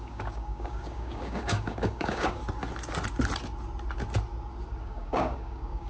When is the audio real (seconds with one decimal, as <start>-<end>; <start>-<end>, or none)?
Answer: 2.4-4.8